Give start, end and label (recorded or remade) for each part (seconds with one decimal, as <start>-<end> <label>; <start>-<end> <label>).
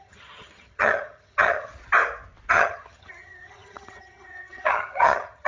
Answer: 0.0-1.7 remade; 1.7-2.5 recorded; 2.5-5.5 remade